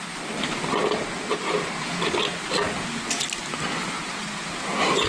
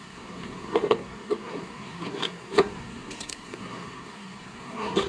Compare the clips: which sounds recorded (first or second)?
first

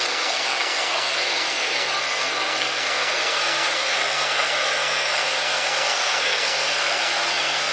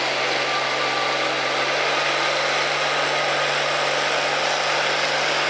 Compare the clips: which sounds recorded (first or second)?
second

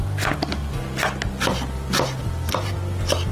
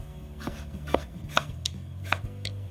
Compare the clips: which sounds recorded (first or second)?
first